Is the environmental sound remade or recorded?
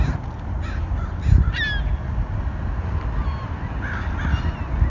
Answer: recorded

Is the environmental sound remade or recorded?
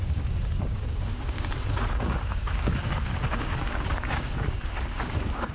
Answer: remade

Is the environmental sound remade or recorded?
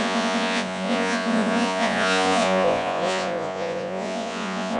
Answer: remade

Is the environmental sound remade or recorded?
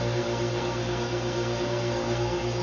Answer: remade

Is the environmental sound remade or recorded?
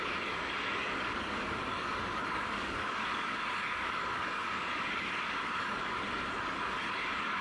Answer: remade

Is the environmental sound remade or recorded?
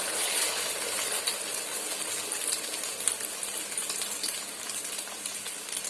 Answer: recorded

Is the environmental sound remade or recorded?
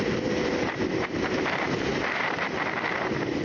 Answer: remade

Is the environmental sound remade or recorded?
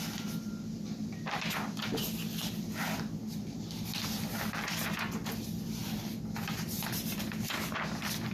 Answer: recorded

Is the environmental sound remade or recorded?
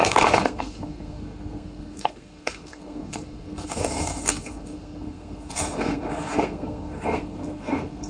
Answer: remade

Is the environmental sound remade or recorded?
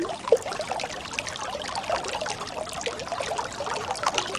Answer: recorded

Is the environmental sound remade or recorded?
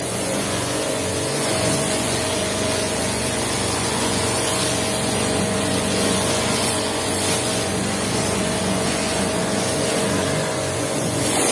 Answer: remade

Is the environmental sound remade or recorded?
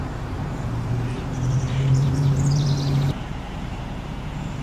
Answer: remade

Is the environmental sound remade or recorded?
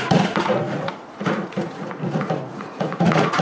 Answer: remade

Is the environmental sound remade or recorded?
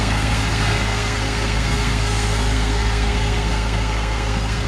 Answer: remade